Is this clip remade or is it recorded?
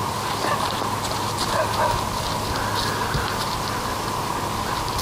recorded